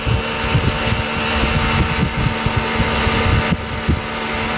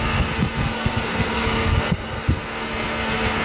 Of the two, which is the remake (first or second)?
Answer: second